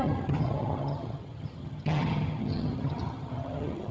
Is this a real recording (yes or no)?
no